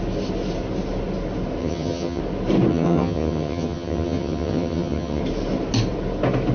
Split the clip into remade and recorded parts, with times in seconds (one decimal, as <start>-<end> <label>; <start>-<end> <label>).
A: 0.0-1.6 recorded; 1.6-2.2 remade; 2.2-2.7 recorded; 2.7-5.2 remade; 5.2-6.5 recorded